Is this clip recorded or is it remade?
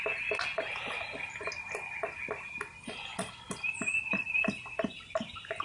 recorded